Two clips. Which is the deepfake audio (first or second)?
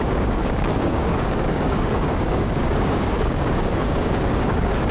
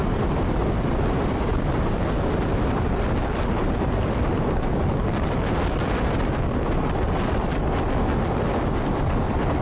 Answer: first